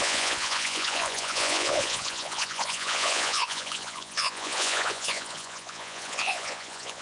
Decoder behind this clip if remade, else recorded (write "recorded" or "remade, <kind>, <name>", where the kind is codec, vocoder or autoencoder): remade, vocoder, Vocos